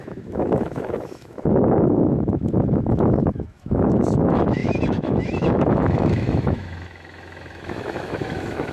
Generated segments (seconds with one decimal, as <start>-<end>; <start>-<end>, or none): 0.0-8.7